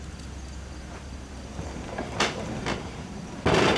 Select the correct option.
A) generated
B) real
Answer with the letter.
B